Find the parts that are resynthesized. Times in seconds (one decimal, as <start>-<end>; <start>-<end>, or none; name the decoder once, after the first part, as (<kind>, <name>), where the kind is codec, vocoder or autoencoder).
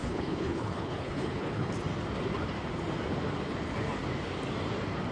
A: 0.0-1.7 (codec, HILCodec)